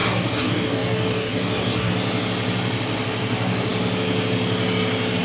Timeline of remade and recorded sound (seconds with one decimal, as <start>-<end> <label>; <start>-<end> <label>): 0.0-1.9 remade; 1.9-5.2 recorded